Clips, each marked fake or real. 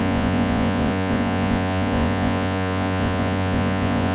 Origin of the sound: fake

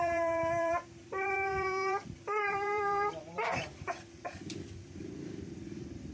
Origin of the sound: fake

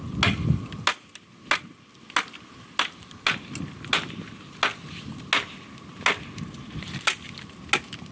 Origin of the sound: real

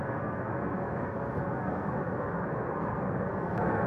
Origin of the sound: fake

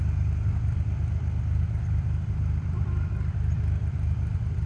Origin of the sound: fake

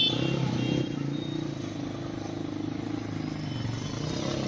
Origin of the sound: real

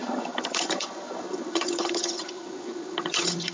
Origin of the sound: fake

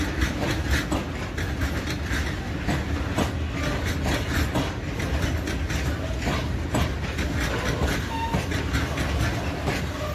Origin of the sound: real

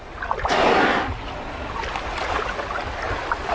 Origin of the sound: real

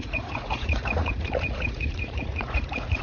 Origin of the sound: fake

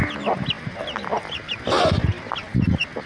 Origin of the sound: real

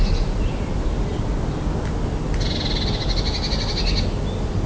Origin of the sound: real